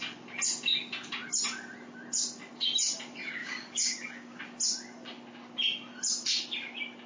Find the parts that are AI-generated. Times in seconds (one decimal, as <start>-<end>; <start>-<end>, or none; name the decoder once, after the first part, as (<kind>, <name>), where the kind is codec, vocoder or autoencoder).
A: 3.4-4.4 (codec, DAC)